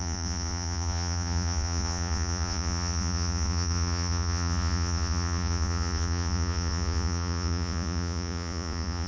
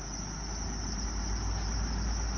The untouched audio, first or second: second